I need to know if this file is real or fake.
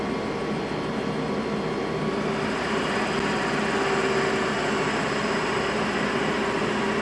real